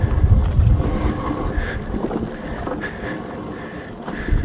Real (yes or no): yes